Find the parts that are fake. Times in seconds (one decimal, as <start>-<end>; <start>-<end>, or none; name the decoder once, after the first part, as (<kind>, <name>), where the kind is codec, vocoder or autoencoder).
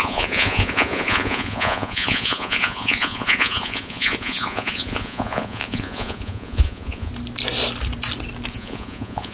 0.0-7.1 (vocoder, Vocos); 8.5-9.3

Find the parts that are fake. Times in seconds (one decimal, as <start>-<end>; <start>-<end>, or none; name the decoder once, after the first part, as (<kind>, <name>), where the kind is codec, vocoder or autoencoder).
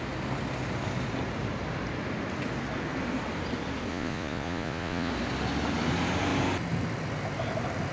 3.9-5.1 (vocoder, Vocos)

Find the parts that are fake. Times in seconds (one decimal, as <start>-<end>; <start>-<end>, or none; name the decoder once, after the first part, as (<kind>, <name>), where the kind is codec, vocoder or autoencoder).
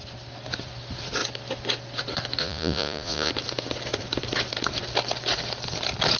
2.4-3.3 (vocoder, Vocos)